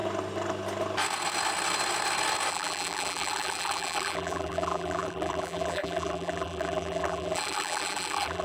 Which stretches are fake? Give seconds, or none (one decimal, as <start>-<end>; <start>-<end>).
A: 2.5-8.4